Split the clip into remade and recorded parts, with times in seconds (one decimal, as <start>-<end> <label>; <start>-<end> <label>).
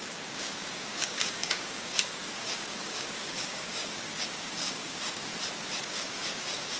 0.0-5.3 remade; 5.3-5.8 recorded; 5.8-6.8 remade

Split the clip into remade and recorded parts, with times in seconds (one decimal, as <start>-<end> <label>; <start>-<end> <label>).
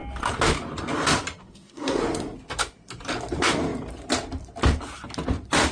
0.0-1.4 recorded; 1.4-2.0 remade; 2.0-5.7 recorded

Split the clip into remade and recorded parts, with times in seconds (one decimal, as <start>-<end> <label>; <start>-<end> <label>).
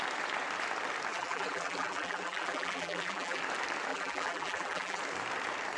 0.0-1.1 recorded; 1.1-3.4 remade; 3.4-3.9 recorded; 3.9-5.0 remade; 5.0-5.8 recorded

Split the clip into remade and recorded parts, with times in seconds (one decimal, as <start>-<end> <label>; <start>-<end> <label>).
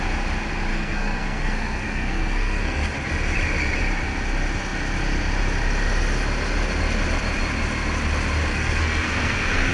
0.0-0.7 recorded; 0.7-2.9 remade; 2.9-8.5 recorded; 8.5-9.7 remade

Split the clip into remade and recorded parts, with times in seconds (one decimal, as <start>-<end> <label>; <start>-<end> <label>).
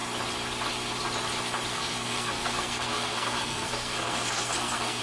0.0-1.7 recorded; 1.7-5.0 remade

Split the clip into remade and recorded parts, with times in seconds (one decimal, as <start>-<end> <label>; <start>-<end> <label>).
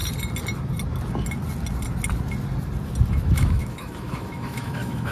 0.0-3.1 recorded; 3.1-5.1 remade